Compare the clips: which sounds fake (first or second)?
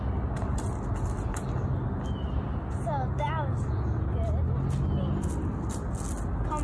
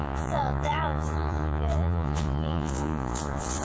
second